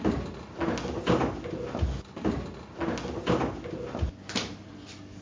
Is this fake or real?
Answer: real